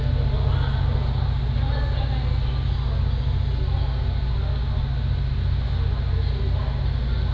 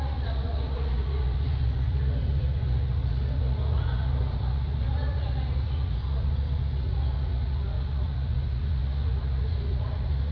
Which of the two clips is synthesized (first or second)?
second